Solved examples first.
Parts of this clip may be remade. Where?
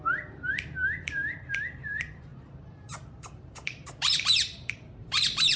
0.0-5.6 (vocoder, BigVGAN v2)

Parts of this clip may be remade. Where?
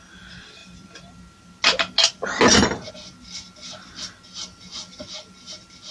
none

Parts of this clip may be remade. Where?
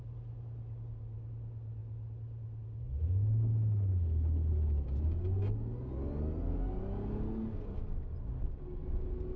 none